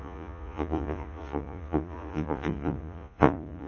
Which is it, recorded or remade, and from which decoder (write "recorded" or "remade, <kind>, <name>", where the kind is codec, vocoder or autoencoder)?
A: remade, vocoder, Vocos